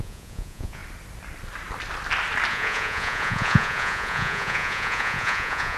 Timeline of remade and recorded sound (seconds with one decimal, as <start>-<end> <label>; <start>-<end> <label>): 0.0-0.8 remade; 0.8-2.5 recorded; 2.5-5.8 remade